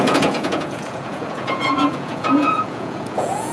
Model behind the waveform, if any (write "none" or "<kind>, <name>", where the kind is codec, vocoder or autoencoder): vocoder, Vocos